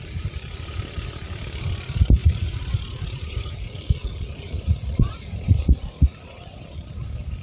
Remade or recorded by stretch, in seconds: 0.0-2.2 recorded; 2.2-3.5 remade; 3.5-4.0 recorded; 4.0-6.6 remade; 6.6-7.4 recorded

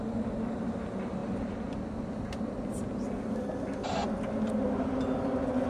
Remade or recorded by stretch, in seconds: 0.0-5.7 recorded

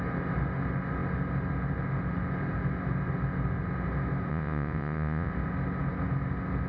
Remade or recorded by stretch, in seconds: 0.0-4.3 recorded; 4.3-5.3 remade; 5.3-6.7 recorded

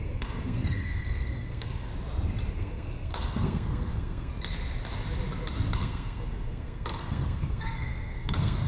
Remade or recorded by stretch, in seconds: 0.0-1.9 remade; 1.9-2.5 recorded; 2.5-4.3 remade; 4.3-5.7 recorded; 5.7-8.7 remade

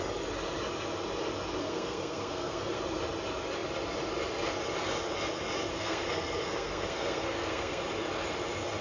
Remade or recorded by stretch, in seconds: 0.0-1.6 recorded; 1.6-2.8 remade; 2.8-5.7 recorded; 5.7-7.8 remade; 7.8-8.8 recorded